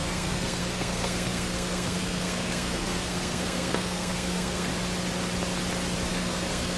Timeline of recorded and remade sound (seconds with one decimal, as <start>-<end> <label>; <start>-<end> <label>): 0.0-4.7 remade; 4.7-6.1 recorded; 6.1-6.8 remade